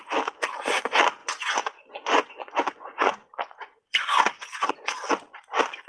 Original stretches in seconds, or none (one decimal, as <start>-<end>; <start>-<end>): 0.0-1.2; 4.7-5.9